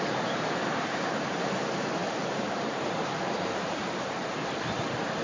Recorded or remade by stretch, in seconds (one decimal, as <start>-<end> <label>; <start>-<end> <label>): 0.0-4.4 remade; 4.4-5.2 recorded